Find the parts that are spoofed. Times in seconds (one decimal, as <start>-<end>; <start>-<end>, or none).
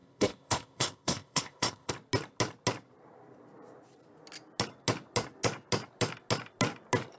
0.0-1.9